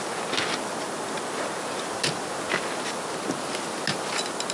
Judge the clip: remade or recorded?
recorded